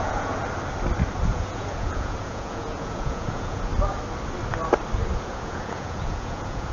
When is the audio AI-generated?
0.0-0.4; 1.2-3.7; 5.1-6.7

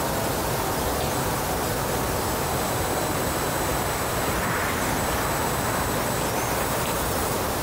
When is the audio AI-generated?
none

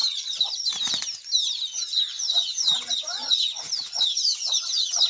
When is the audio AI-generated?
0.0-0.7; 1.8-5.1